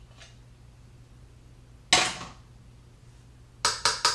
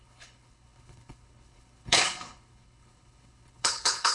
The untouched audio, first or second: first